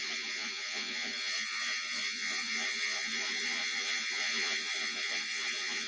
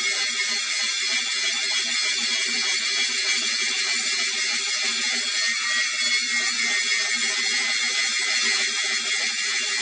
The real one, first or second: second